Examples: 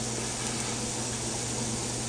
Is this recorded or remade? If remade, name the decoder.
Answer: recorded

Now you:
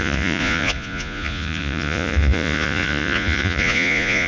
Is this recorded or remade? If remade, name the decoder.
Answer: remade, vocoder, Vocos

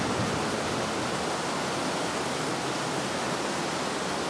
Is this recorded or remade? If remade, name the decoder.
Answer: recorded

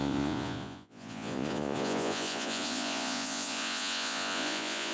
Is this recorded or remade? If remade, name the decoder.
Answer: remade, vocoder, Vocos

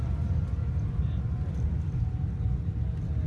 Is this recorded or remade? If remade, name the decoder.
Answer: recorded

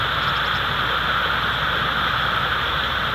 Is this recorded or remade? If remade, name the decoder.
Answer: recorded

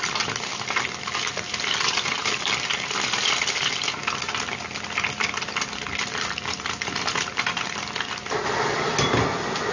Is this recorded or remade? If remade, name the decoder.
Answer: recorded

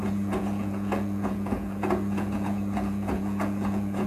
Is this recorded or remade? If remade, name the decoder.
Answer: remade, vocoder, Vocos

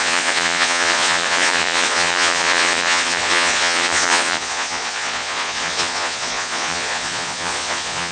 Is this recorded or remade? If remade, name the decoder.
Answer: remade, vocoder, Vocos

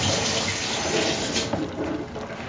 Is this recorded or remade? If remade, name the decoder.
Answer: recorded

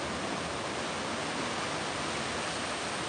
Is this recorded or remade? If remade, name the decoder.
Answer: recorded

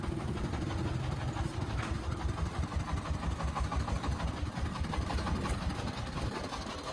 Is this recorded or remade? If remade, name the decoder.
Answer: recorded